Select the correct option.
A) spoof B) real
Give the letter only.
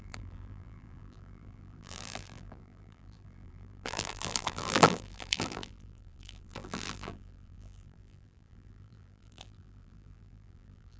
A